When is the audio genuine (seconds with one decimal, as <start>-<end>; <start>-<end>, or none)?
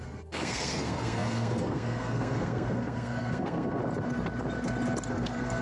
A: 3.8-5.1